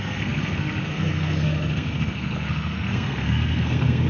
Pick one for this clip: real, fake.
fake